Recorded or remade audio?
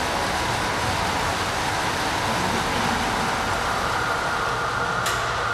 recorded